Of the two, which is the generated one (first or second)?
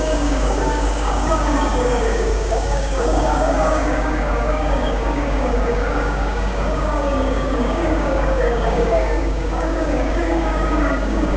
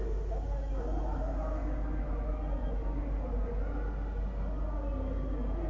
first